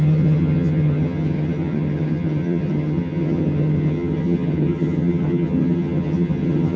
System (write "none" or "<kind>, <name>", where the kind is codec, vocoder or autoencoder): vocoder, HiFi-GAN